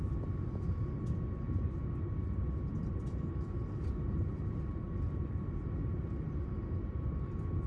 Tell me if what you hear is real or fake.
real